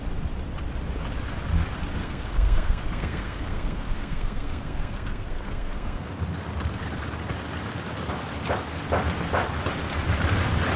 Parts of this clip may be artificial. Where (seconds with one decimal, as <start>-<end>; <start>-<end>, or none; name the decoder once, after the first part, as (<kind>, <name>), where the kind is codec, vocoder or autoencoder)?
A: 2.0-6.1 (codec, SNAC)